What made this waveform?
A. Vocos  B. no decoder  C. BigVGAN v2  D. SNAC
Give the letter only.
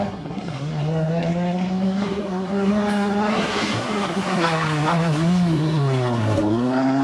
D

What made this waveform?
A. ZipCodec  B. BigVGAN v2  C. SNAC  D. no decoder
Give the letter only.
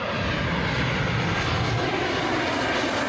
D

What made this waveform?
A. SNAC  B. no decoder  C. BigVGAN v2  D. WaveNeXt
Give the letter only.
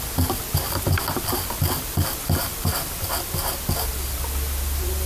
B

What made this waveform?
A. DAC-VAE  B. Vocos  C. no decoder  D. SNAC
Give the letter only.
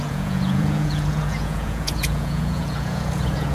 B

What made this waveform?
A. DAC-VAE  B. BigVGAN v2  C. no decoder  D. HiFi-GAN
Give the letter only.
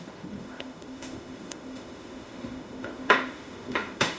A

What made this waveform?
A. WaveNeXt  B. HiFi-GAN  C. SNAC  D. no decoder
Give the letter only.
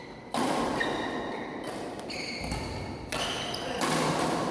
D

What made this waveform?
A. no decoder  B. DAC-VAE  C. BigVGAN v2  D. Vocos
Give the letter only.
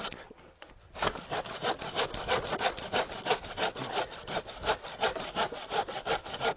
A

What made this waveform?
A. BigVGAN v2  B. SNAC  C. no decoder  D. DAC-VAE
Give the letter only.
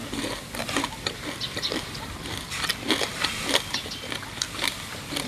A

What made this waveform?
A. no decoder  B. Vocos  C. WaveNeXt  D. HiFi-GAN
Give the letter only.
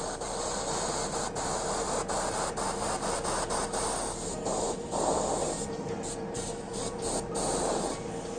A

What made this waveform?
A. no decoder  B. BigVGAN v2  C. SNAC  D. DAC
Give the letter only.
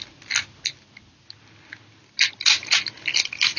A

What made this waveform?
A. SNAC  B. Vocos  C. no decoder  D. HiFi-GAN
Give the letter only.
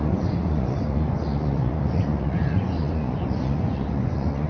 B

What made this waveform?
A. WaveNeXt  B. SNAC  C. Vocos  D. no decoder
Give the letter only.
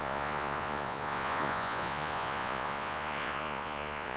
C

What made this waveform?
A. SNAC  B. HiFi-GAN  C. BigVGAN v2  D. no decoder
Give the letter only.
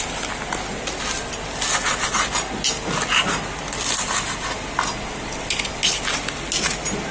D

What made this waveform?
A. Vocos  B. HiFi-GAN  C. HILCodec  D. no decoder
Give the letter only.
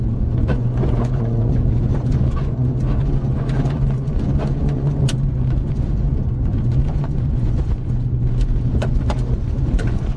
A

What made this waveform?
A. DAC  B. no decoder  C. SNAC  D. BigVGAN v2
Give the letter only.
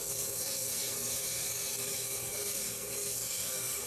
C